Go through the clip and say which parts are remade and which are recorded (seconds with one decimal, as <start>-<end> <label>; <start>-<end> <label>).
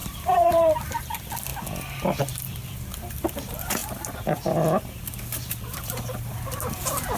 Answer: 0.0-7.2 remade